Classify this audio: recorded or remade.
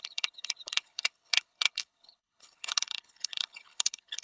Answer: remade